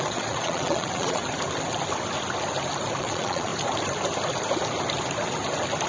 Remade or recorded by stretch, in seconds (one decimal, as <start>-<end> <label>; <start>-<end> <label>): 0.0-1.2 remade; 1.2-3.0 recorded; 3.0-3.5 remade; 3.5-5.9 recorded